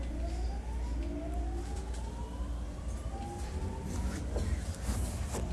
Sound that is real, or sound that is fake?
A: real